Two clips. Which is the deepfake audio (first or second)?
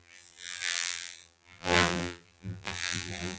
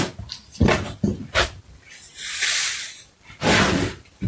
first